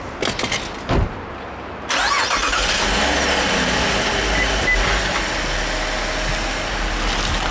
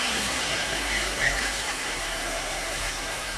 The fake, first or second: second